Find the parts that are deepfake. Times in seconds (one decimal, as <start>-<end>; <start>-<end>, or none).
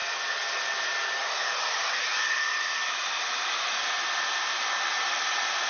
none